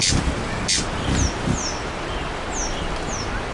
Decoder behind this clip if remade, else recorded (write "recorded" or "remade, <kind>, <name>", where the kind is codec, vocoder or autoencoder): recorded